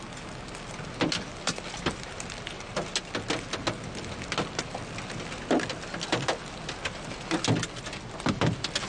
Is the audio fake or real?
real